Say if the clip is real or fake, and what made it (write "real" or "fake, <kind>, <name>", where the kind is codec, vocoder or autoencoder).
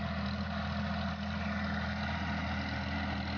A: real